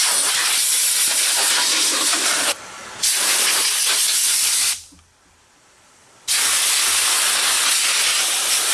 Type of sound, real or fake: real